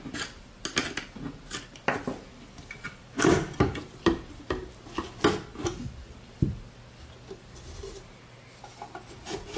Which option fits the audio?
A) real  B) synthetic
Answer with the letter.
A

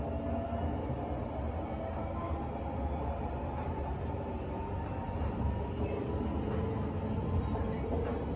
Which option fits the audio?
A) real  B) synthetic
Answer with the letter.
A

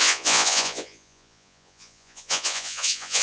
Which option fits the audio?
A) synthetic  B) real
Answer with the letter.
A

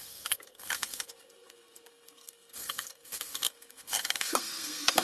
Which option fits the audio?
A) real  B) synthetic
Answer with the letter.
B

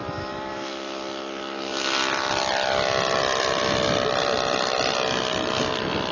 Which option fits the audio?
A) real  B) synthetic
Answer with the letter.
A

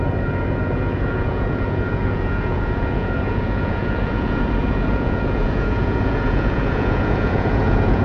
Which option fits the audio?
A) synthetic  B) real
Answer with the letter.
A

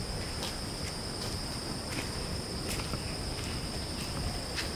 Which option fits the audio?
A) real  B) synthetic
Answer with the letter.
A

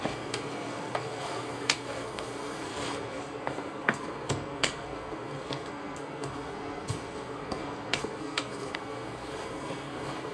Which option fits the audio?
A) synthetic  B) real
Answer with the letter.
A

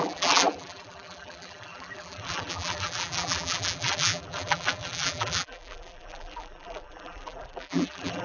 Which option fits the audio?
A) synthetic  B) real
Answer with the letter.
A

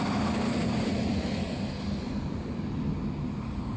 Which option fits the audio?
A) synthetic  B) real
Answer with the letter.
B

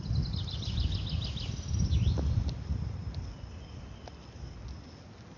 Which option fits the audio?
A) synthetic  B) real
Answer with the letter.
B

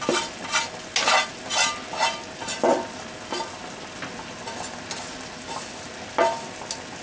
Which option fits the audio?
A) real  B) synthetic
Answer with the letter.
A